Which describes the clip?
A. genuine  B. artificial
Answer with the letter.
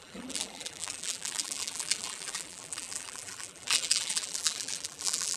B